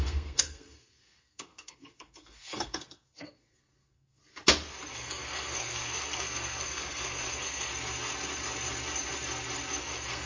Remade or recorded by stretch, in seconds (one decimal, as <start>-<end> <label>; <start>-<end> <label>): 0.0-4.2 remade; 4.2-4.9 recorded; 4.9-7.7 remade; 7.7-9.8 recorded; 9.8-10.3 remade